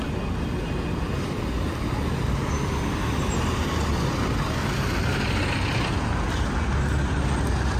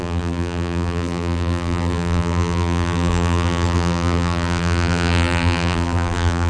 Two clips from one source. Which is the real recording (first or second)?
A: first